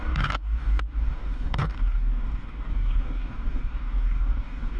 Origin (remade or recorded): remade